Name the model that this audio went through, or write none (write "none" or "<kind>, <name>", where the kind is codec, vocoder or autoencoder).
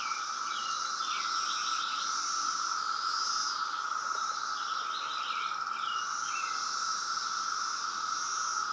none